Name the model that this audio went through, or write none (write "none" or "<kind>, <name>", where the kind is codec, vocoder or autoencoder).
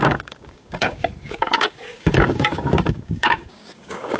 codec, DAC